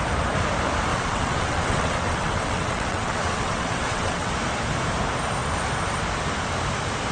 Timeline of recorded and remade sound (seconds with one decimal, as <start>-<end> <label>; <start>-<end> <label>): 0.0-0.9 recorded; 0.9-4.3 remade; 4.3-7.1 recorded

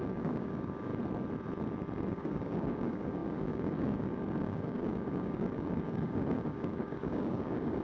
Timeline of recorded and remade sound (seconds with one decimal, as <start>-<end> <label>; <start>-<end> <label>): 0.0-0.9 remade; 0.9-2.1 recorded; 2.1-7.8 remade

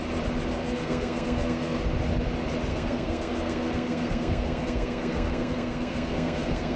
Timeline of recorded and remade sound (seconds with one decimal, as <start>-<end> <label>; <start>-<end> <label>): 0.0-0.5 recorded; 0.5-1.8 remade; 1.8-2.7 recorded; 2.7-6.8 remade

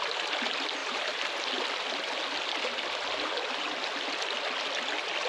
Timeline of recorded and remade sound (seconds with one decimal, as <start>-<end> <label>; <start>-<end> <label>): 0.0-0.8 recorded; 0.8-1.5 remade; 1.5-5.3 recorded

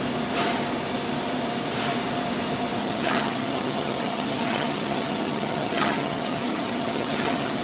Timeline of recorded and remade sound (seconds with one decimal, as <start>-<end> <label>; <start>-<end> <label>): 0.0-2.8 recorded; 2.8-7.6 remade

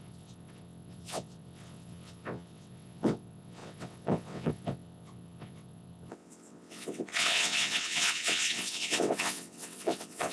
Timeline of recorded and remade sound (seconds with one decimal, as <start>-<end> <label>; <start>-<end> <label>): 0.0-10.3 remade

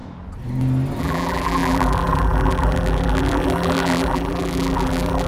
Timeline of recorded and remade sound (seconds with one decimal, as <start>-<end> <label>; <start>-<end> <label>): 0.0-1.0 recorded; 1.0-5.3 remade